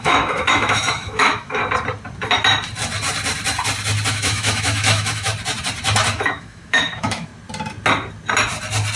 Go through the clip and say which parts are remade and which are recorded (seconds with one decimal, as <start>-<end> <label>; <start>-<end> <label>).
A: 0.0-1.6 remade; 1.6-4.1 recorded; 4.1-5.3 remade; 5.3-6.1 recorded; 6.1-7.3 remade; 7.3-9.0 recorded